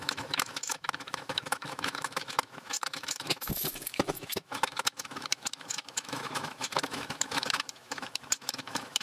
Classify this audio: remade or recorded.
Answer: remade